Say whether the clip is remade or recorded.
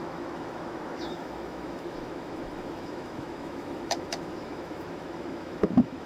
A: remade